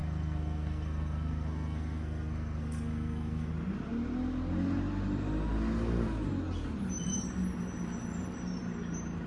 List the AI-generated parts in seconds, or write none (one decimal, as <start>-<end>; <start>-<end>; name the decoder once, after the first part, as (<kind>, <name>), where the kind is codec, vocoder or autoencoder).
0.0-3.5 (codec, SNAC)